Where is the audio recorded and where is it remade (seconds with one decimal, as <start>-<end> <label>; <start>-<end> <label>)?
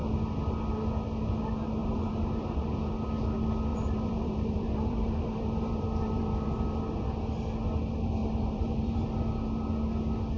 0.0-1.8 recorded; 1.8-2.9 remade; 2.9-3.7 recorded; 3.7-6.8 remade; 6.8-8.2 recorded; 8.2-9.2 remade; 9.2-10.4 recorded